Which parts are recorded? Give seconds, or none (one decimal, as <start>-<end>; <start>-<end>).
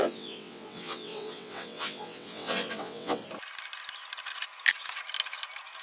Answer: 3.2-5.8